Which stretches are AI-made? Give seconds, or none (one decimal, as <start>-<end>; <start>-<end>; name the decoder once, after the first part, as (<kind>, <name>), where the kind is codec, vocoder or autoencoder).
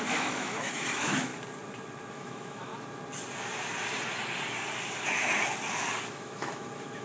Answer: 0.0-1.3 (autoencoder, DAC-VAE); 2.1-2.7; 6.1-7.0